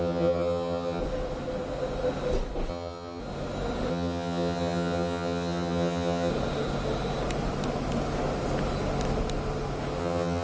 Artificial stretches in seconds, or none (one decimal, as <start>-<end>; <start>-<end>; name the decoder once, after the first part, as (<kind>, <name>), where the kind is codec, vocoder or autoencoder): 0.0-1.0 (vocoder, HiFi-GAN); 2.7-3.2; 3.9-6.3; 10.0-10.4